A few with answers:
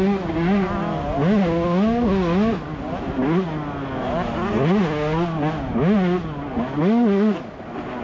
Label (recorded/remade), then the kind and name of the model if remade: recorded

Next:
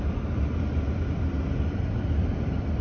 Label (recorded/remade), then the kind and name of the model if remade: recorded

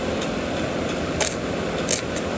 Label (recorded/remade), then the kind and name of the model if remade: recorded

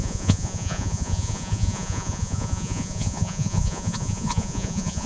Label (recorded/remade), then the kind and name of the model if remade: remade, vocoder, Vocos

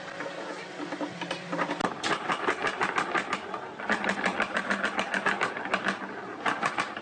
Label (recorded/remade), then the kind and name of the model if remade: recorded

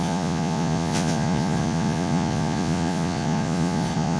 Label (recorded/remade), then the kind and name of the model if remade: remade, vocoder, Vocos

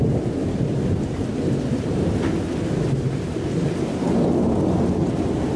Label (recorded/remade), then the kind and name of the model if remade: recorded